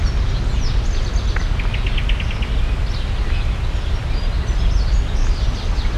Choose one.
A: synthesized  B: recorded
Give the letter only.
B